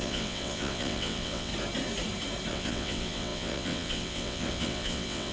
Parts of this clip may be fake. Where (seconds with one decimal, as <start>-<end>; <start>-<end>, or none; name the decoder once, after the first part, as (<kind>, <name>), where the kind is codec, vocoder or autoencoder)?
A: 0.0-1.5 (vocoder, WaveNeXt); 2.5-5.3